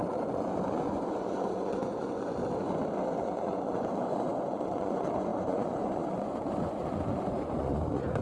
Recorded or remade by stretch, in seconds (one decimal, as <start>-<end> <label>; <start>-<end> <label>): 0.0-2.4 remade; 2.4-3.2 recorded; 3.2-8.2 remade